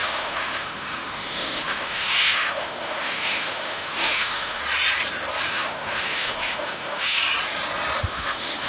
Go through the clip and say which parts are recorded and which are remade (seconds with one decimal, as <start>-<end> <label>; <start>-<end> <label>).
0.0-4.6 remade; 4.6-5.5 recorded; 5.5-7.2 remade; 7.2-8.0 recorded; 8.0-8.7 remade

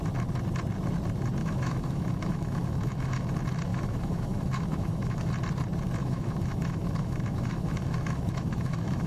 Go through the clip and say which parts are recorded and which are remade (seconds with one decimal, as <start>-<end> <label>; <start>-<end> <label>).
0.0-1.4 recorded; 1.4-3.3 remade; 3.3-3.7 recorded; 3.7-5.3 remade; 5.3-6.0 recorded; 6.0-9.1 remade

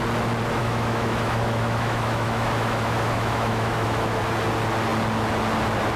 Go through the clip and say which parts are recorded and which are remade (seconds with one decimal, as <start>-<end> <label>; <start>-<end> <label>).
0.0-0.6 recorded; 0.6-4.2 remade; 4.2-6.0 recorded

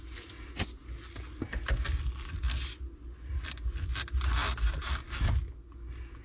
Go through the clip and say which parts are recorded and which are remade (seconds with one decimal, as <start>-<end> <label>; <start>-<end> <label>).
0.0-6.2 recorded

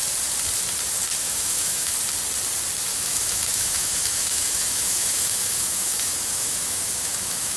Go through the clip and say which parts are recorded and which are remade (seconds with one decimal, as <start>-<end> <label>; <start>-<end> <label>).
0.0-1.2 recorded; 1.2-1.9 remade; 1.9-2.9 recorded; 2.9-7.6 remade

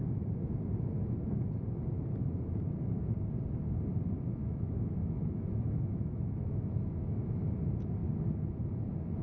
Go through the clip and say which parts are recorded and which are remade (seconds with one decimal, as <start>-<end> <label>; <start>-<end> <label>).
0.0-4.4 recorded; 4.4-7.5 remade; 7.5-9.2 recorded

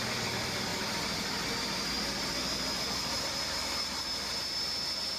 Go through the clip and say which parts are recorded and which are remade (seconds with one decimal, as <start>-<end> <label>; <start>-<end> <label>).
0.0-5.2 recorded

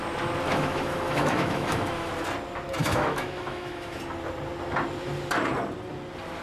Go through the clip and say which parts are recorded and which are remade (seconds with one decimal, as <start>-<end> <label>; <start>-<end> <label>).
0.0-0.5 recorded; 0.5-2.1 remade; 2.1-2.8 recorded; 2.8-4.0 remade; 4.0-6.4 recorded